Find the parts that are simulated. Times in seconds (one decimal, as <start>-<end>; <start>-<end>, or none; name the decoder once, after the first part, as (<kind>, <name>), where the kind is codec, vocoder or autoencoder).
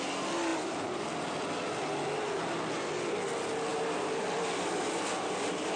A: 3.7-5.8 (vocoder, BigVGAN v2)